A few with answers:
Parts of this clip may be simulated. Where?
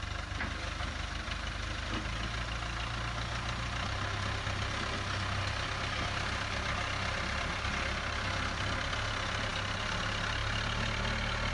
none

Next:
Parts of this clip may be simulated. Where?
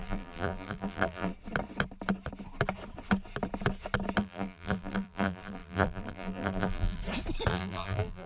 0.0-1.3; 4.2-7.0; 7.5-8.3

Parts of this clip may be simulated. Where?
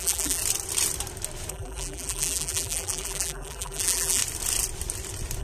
0.0-0.4; 1.5-4.2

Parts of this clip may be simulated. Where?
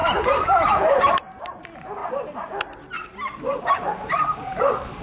0.0-1.0; 3.5-5.0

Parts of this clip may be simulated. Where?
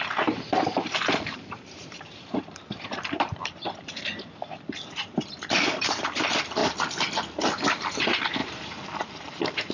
0.0-6.6; 7.9-9.7